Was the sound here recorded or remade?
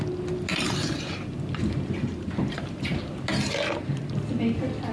recorded